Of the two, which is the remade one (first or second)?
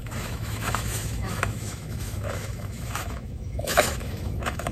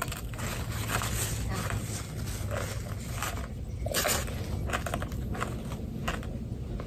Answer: first